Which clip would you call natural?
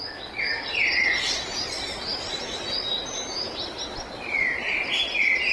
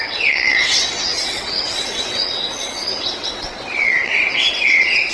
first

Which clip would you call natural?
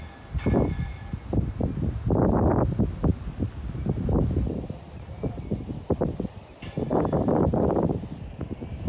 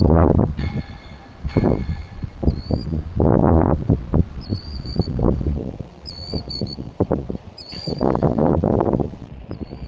first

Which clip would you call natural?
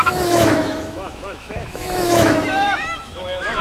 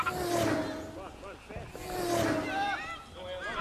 second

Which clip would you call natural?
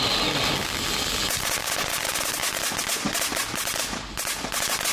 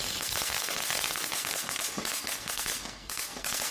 first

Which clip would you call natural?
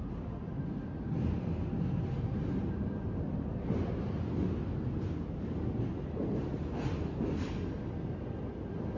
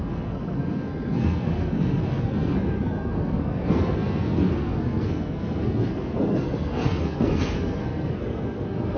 first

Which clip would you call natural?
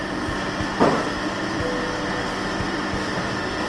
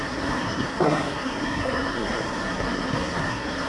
first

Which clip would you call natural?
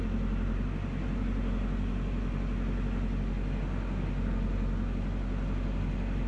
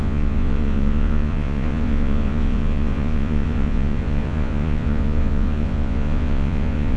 first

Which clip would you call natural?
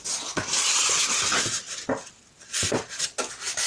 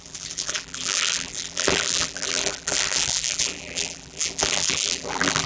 first